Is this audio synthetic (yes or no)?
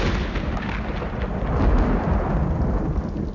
no